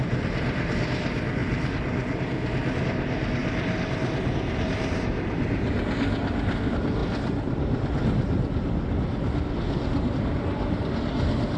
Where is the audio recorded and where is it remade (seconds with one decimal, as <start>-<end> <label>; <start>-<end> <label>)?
0.0-11.6 recorded